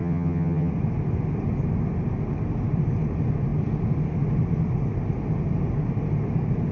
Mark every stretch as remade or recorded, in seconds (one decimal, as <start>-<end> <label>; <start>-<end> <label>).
0.0-0.7 remade; 0.7-6.7 recorded